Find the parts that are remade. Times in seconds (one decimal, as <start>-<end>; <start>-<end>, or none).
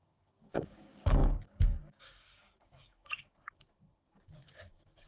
0.0-5.1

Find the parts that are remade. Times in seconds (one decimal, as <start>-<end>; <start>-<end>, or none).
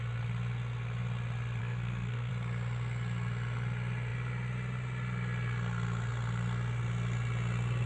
1.6-2.3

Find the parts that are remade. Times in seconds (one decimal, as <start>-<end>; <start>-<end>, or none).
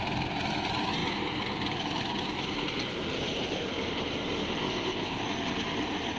4.6-5.2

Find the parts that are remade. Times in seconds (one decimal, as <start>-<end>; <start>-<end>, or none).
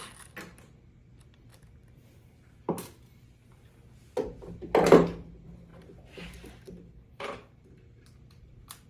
1.5-3.2; 5.7-8.9